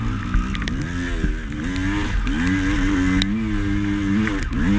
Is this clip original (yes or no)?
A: yes